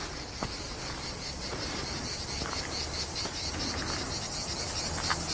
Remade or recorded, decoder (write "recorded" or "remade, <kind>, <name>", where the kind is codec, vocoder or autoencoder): recorded